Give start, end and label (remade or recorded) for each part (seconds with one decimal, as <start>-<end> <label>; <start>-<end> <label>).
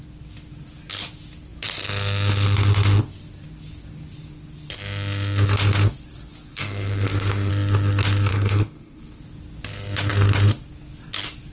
0.0-6.5 recorded; 6.5-7.5 remade; 7.5-8.3 recorded; 8.3-9.2 remade; 9.2-11.5 recorded